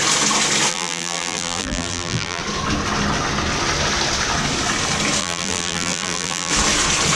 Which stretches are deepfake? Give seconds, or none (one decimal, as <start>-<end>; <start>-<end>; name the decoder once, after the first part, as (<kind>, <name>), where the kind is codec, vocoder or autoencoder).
0.7-2.4 (vocoder, BigVGAN v2); 5.2-6.5